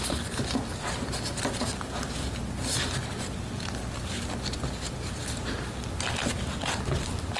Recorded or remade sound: recorded